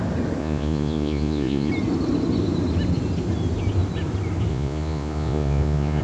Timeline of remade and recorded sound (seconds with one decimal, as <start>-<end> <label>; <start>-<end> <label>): 0.0-0.4 recorded; 0.4-1.7 remade; 1.7-4.5 recorded; 4.5-6.0 remade